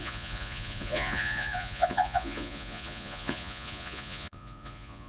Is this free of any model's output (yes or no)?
no